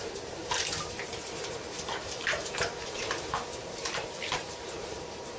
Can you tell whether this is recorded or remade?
remade